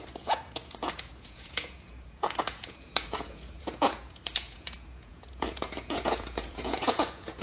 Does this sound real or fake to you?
fake